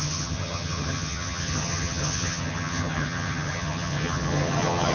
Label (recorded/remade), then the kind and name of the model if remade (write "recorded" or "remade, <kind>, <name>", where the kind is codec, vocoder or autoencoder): remade, vocoder, HiFi-GAN